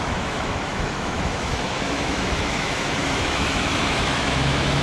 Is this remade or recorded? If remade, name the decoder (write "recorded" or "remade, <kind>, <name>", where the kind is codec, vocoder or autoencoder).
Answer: remade, autoencoder, DAC-VAE